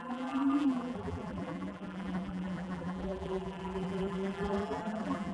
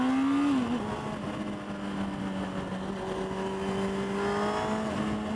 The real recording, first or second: second